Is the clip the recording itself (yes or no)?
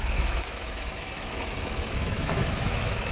no